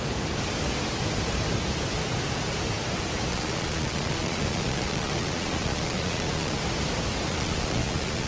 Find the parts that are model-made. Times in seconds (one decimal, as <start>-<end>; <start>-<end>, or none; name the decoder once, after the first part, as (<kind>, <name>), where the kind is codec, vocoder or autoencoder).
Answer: 3.3-6.6 (vocoder, Vocos); 7.3-8.3